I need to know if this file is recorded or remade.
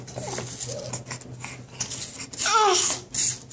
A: recorded